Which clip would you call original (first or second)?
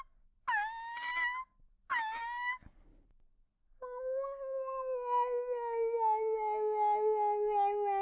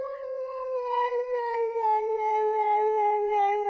first